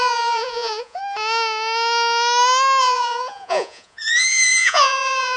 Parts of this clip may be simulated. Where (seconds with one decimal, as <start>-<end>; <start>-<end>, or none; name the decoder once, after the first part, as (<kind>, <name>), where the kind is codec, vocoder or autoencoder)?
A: 0.0-1.0 (vocoder, Vocos); 2.8-5.4